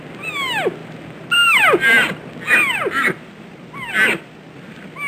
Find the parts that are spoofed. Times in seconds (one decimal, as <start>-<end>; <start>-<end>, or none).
none